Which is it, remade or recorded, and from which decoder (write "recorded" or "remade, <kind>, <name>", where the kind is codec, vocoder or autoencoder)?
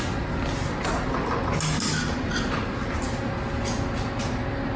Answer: recorded